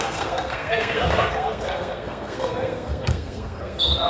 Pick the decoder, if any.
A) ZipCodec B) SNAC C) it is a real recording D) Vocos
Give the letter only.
B